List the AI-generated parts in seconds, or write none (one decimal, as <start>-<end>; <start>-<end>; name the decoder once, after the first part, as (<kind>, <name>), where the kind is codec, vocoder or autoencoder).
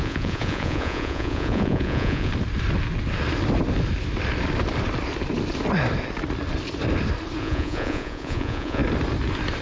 0.0-2.3 (vocoder, Vocos); 7.4-8.8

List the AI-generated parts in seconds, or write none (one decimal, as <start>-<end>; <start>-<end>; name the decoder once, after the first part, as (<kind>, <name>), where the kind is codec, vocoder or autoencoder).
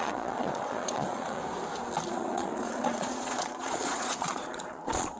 0.0-1.4 (vocoder, Vocos); 2.0-5.2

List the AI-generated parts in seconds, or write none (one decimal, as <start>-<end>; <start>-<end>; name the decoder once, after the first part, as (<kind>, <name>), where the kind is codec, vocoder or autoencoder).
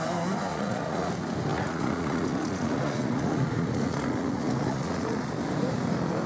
0.5-1.1 (vocoder, Vocos); 1.5-5.3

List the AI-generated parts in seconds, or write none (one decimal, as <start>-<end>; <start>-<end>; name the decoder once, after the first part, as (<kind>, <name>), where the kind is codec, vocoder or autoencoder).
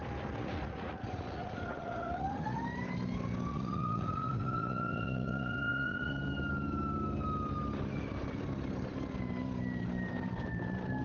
0.4-2.6 (vocoder, Vocos); 3.5-6.1